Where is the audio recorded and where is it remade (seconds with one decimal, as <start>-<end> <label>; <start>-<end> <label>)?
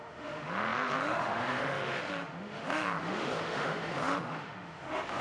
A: 0.0-5.2 remade